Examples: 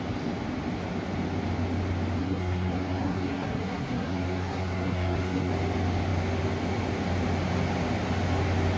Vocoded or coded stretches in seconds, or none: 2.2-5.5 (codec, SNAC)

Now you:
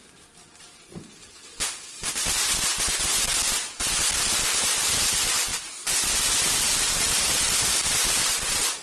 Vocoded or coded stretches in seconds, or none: none

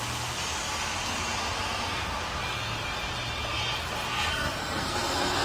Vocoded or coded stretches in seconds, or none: 1.4-2.2 (codec, SNAC); 4.1-5.4

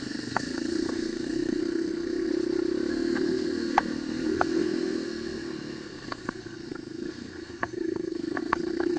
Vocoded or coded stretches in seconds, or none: 0.0-2.3 (codec, SNAC); 2.9-9.0

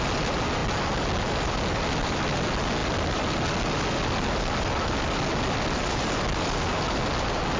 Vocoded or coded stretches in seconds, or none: none